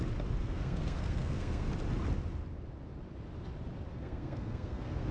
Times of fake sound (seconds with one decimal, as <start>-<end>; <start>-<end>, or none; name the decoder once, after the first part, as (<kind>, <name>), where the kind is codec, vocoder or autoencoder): 0.4-1.7 (codec, SNAC); 3.9-5.1